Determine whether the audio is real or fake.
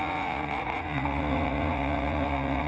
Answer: fake